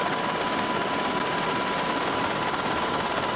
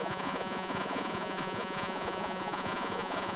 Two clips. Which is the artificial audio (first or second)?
second